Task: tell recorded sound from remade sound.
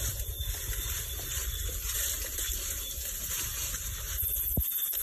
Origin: remade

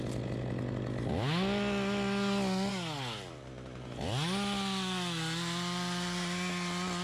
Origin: recorded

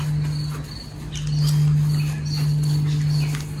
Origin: recorded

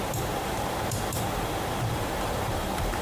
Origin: remade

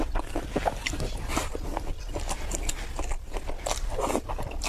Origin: remade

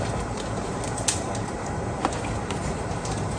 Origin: remade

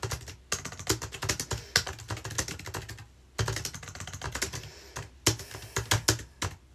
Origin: recorded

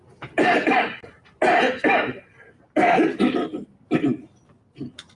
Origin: recorded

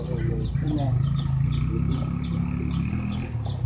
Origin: recorded